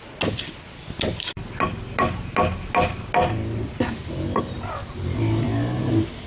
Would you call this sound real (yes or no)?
yes